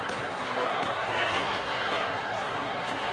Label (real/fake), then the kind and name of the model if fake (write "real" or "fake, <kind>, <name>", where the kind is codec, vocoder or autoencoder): fake, codec, SNAC